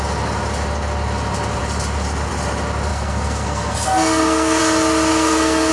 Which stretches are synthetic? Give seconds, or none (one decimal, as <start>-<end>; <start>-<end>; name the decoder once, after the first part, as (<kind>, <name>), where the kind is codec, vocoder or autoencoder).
2.9-4.6 (codec, SNAC); 5.1-5.7

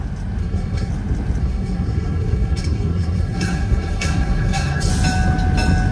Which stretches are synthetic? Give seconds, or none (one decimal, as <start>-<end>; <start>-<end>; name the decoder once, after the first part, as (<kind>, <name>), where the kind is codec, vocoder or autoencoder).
0.4-0.9 (codec, SNAC); 1.4-4.9

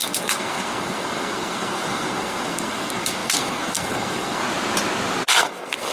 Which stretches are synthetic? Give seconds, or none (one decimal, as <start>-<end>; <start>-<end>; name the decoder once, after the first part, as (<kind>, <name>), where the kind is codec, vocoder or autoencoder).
0.0-4.4 (codec, SNAC); 5.3-5.9

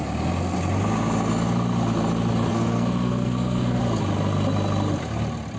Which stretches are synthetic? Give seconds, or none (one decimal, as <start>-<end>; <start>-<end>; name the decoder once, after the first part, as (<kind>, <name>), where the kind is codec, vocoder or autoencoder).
2.5-3.8 (codec, SNAC)

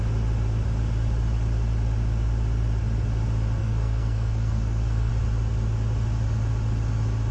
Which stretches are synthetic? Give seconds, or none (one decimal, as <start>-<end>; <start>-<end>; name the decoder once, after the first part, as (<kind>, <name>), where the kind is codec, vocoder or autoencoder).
3.6-5.1 (codec, SNAC)